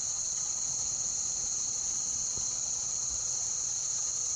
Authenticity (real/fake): fake